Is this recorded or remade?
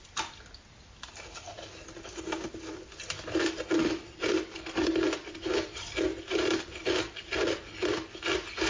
recorded